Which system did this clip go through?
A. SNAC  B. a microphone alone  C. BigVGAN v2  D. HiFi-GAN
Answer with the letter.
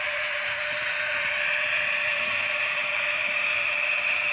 C